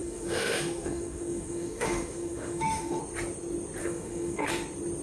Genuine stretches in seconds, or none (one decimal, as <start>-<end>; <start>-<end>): 3.0-3.8; 4.5-5.0